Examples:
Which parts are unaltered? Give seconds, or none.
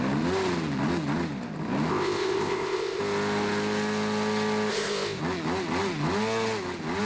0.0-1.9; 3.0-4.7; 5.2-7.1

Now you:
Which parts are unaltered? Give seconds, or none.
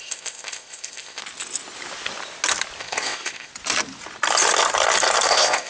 1.2-2.8; 3.5-5.3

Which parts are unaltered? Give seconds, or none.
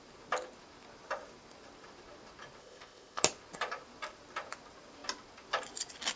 0.0-2.6; 3.2-6.2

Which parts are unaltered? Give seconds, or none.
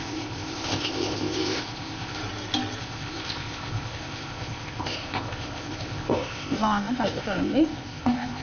2.2-2.8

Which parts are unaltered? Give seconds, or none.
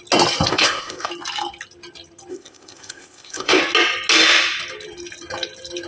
0.0-0.5; 1.1-2.3; 3.6-5.9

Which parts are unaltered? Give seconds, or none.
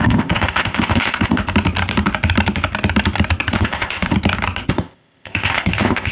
1.4-3.5; 4.1-4.7